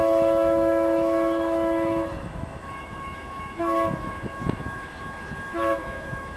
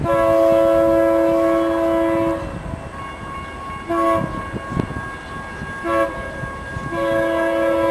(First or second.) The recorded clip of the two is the second